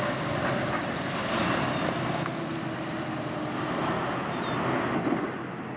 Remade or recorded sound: recorded